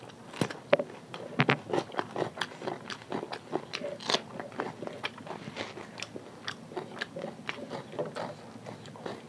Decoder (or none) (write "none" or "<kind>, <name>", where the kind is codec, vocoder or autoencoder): none